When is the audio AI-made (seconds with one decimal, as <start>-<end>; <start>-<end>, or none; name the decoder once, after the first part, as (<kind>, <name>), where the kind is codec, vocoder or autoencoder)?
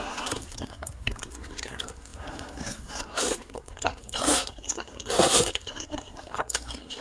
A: 0.0-7.0 (codec, SNAC)